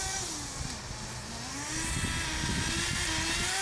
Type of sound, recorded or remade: recorded